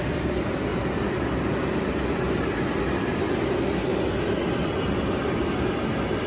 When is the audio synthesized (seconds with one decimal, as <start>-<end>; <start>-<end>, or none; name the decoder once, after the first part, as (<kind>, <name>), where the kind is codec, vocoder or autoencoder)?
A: 0.7-2.8 (vocoder, BigVGAN v2)